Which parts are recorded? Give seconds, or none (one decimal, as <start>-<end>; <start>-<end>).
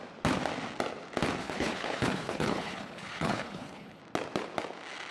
0.0-1.4; 4.0-5.1